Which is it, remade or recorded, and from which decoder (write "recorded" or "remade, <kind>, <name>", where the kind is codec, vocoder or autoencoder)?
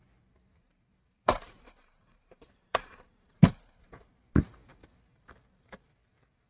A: remade, vocoder, BigVGAN v2